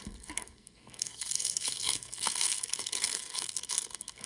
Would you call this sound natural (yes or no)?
no